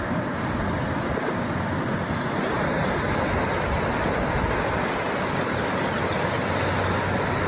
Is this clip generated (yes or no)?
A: no